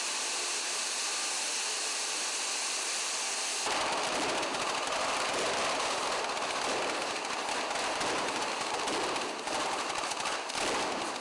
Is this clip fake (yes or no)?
no